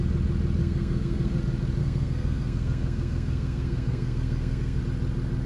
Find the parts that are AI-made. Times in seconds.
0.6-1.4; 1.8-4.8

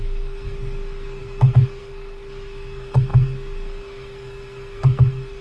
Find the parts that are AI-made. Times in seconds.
0.0-5.4

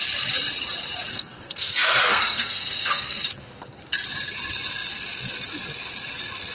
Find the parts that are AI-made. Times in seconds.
1.1-3.2